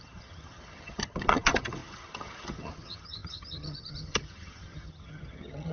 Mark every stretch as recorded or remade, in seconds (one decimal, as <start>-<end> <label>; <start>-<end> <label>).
0.0-5.7 remade